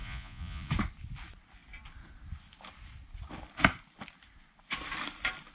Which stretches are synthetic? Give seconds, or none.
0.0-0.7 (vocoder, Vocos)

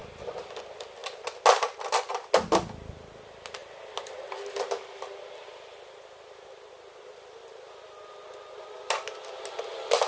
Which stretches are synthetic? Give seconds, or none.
none

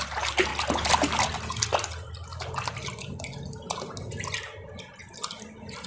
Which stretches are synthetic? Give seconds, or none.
none

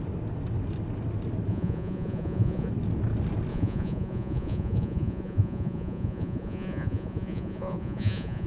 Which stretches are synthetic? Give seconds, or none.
1.5-2.7 (vocoder, Vocos); 3.5-8.5

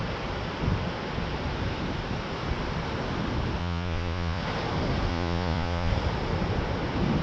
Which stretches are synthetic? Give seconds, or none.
3.6-4.4 (vocoder, Vocos); 5.1-5.9

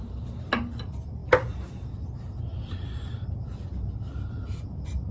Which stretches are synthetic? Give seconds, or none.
none